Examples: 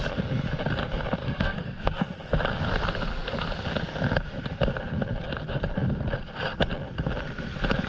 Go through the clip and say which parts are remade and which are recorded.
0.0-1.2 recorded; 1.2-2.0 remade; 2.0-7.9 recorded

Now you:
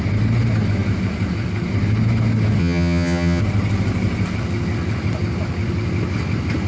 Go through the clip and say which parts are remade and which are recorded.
0.0-2.6 recorded; 2.6-3.4 remade; 3.4-6.7 recorded

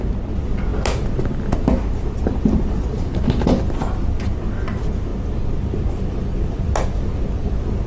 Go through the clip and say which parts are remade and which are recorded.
0.0-7.9 recorded

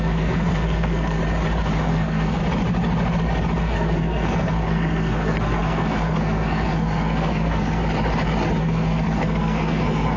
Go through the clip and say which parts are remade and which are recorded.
0.0-1.2 remade; 1.2-1.8 recorded; 1.8-2.4 remade; 2.4-3.6 recorded; 3.6-7.8 remade; 7.8-8.6 recorded; 8.6-10.2 remade